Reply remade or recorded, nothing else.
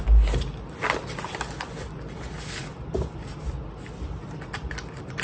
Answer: recorded